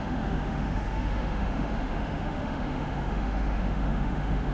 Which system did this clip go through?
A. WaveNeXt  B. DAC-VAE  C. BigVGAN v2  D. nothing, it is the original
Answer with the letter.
B